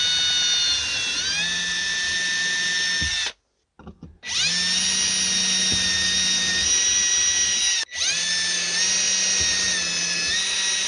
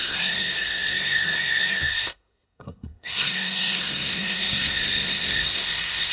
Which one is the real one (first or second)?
first